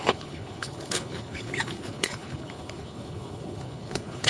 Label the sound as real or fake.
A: fake